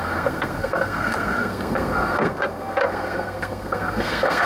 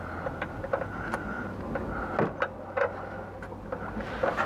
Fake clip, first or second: first